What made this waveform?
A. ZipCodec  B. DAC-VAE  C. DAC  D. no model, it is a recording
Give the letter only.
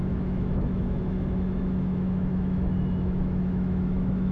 B